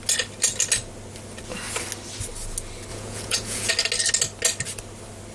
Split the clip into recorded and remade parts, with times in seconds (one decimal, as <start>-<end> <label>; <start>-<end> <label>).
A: 0.0-2.9 recorded; 2.9-3.7 remade; 3.7-5.3 recorded